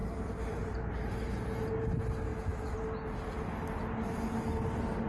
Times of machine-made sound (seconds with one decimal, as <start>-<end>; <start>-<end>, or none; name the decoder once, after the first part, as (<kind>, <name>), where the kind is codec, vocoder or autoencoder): 0.0-1.1 (vocoder, BigVGAN v2)